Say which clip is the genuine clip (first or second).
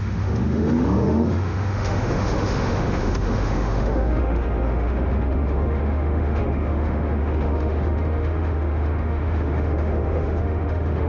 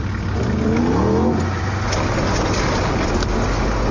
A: second